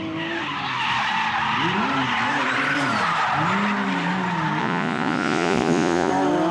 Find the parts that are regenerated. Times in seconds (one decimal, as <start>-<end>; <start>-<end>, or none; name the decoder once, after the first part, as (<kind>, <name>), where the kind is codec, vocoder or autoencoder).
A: 4.6-6.1 (vocoder, Vocos)

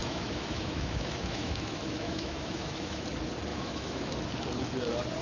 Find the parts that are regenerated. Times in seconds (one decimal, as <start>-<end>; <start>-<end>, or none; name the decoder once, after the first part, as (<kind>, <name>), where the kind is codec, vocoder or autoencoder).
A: 0.0-3.1 (autoencoder, DAC-VAE); 3.5-4.1

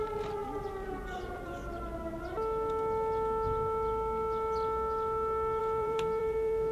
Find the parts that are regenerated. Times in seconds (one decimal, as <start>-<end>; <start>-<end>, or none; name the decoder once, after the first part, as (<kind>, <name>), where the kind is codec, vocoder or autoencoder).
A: 0.0-0.4 (vocoder, BigVGAN v2); 0.9-1.6; 5.6-6.7

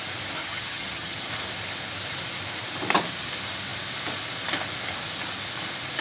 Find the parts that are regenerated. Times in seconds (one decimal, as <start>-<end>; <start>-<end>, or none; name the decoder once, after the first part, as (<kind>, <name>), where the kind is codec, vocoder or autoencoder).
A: 0.4-1.3 (vocoder, HiFi-GAN)

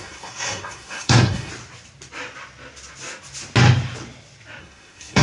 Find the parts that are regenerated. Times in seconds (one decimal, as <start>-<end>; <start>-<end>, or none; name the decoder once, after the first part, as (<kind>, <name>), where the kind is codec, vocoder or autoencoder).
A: 0.0-1.5 (codec, SNAC); 4.6-5.2

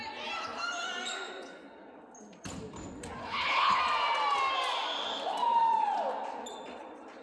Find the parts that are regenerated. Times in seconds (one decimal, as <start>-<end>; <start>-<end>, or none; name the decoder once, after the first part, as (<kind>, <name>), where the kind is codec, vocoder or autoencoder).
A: 3.2-3.8 (codec, HILCodec)

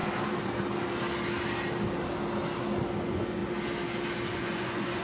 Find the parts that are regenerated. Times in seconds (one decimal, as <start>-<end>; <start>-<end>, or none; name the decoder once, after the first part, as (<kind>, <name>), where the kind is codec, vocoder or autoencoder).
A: 3.0-3.4 (vocoder, Vocos); 4.3-5.0